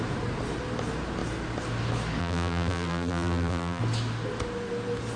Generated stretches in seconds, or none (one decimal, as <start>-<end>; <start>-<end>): 2.2-3.8